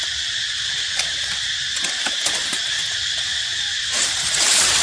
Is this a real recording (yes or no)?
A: yes